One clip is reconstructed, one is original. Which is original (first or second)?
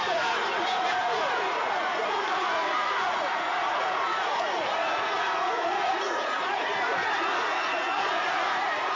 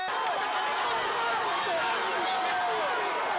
second